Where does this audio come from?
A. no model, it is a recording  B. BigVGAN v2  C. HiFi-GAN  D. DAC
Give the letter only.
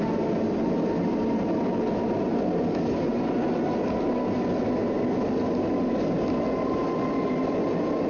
A